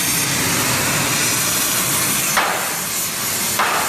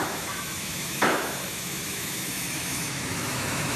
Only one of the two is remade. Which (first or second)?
second